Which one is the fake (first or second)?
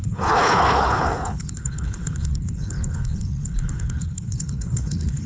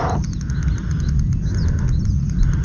first